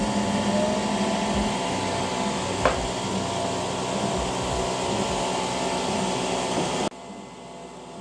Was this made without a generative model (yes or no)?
yes